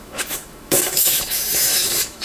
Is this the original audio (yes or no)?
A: no